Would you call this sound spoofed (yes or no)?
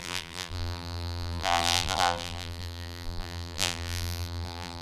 yes